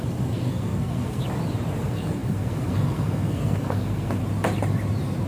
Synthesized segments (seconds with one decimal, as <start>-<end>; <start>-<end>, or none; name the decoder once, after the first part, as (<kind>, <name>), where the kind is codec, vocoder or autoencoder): 0.0-1.2 (codec, SNAC); 1.8-4.2